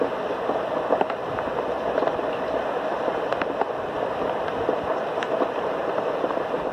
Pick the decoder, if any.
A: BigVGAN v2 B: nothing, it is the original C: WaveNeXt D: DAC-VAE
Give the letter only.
B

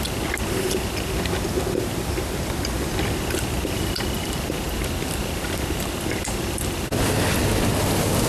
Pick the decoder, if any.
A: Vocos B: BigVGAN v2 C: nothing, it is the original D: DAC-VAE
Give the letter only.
C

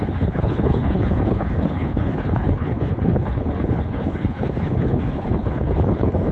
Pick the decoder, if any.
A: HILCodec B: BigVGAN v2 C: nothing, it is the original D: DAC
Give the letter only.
A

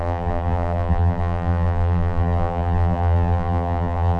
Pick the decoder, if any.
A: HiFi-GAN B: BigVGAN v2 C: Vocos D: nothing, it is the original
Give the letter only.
B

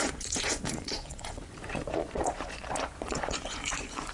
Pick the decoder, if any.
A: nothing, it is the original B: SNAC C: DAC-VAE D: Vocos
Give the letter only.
D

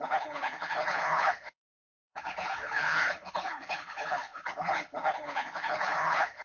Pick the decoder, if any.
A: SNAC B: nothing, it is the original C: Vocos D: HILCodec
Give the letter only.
D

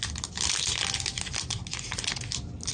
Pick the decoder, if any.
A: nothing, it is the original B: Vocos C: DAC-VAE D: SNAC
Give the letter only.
A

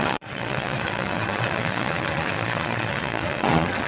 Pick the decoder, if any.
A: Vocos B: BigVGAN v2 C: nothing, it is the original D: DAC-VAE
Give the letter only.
A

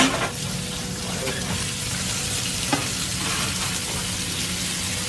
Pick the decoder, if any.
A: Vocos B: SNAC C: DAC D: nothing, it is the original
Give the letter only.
D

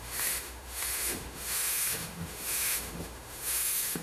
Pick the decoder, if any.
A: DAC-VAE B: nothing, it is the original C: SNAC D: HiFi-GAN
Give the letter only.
A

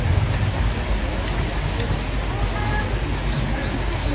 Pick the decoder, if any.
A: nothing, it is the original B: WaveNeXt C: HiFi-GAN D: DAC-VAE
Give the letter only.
A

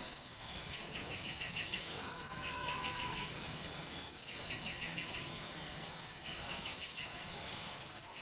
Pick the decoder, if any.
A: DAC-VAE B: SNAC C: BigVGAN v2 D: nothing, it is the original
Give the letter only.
B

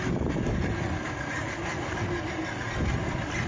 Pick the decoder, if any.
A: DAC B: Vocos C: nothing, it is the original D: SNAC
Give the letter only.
C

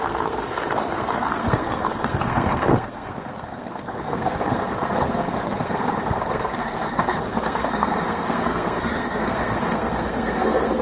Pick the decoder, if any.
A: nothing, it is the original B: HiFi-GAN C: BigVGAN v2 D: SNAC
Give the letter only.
D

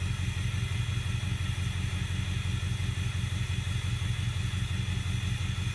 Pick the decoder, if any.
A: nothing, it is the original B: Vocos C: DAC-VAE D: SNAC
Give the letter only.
A